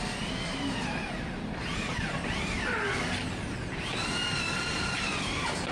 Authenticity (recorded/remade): recorded